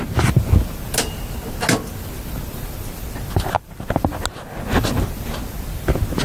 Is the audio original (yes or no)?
yes